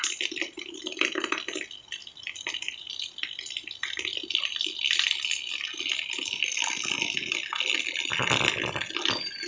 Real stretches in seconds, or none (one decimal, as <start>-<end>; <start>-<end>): 0.0-2.0; 2.9-9.5